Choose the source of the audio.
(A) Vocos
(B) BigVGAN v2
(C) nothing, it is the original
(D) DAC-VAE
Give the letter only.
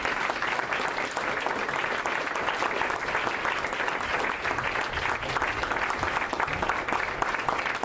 C